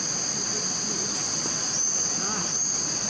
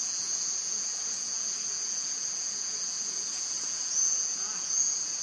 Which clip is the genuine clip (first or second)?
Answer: first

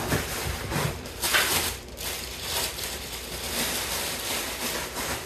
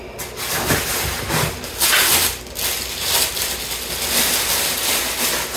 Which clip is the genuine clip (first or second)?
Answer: second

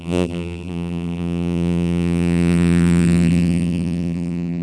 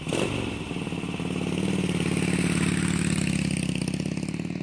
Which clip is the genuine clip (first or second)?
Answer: second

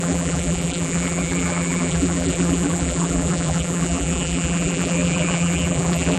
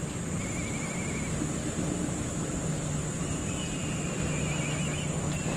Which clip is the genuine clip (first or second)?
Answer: second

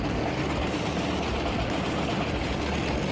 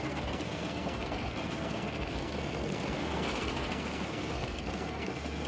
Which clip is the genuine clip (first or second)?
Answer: first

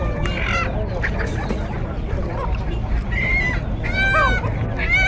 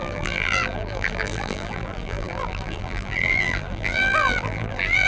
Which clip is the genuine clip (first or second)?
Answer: first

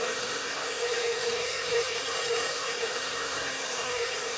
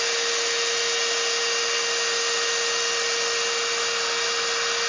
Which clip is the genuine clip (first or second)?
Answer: second